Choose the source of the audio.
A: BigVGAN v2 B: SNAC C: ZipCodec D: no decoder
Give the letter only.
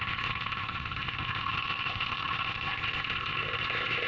C